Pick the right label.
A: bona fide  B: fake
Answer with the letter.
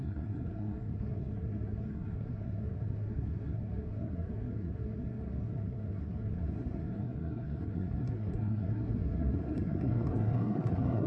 B